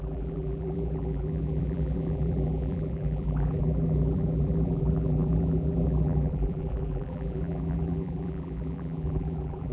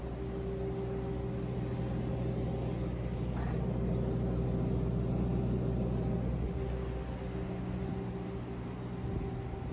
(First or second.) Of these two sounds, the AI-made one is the first